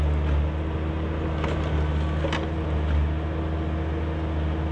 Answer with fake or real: real